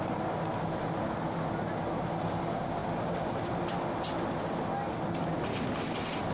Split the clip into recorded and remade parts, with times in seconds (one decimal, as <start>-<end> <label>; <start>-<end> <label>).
0.0-6.3 recorded